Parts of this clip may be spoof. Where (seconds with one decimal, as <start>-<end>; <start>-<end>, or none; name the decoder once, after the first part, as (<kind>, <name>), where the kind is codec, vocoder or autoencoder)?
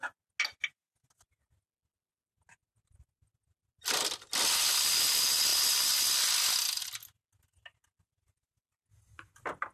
none